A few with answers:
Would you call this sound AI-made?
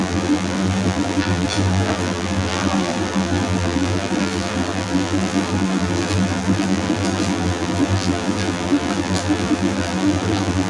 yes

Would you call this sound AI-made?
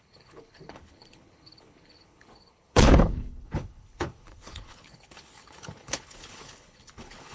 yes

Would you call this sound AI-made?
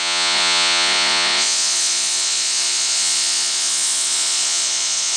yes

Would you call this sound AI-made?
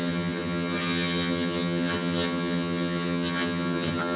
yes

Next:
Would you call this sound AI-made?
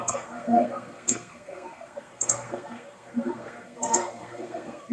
yes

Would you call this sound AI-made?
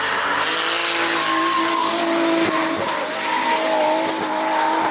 no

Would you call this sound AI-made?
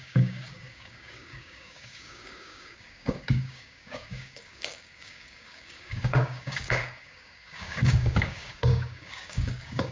yes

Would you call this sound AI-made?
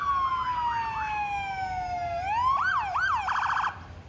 no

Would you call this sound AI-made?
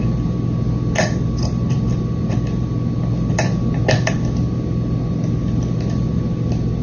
no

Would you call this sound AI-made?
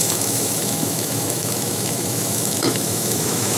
yes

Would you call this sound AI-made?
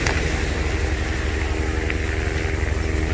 no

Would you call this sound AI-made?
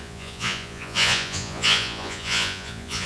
yes